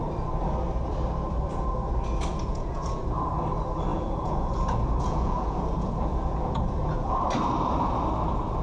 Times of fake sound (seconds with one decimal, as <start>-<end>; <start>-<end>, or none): 2.3-3.0; 3.9-7.2